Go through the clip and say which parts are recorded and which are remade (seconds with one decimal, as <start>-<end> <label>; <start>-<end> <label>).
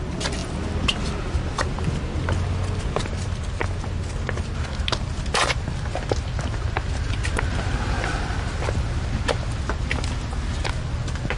0.0-11.4 recorded